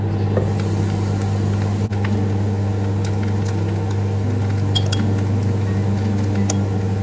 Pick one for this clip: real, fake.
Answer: real